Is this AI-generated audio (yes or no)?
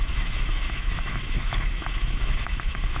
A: yes